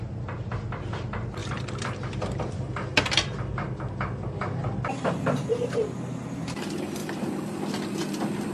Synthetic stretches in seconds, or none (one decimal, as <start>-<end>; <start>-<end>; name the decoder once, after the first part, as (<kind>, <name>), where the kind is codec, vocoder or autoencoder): none